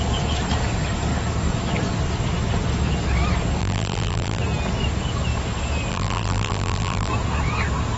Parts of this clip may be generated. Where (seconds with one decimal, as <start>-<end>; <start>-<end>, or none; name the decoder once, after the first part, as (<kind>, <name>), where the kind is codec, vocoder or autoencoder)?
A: 3.6-4.4 (vocoder, BigVGAN v2); 5.9-7.1